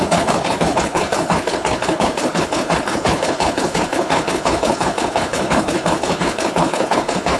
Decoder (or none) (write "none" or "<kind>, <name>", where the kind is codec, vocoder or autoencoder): codec, HILCodec